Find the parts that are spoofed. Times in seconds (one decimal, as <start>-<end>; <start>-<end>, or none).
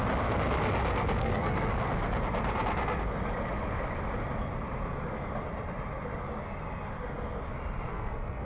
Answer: 1.2-1.7; 7.9-8.5